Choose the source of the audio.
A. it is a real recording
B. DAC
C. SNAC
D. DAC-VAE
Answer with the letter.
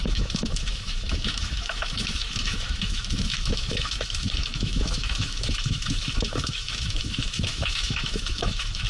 D